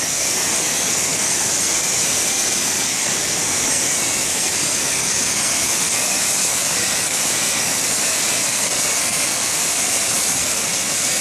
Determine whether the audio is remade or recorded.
remade